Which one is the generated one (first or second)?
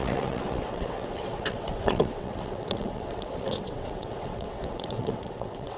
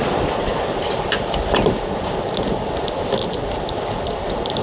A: first